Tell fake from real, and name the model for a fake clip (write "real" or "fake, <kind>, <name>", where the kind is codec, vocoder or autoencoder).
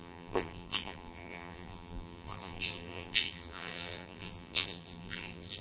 fake, vocoder, BigVGAN v2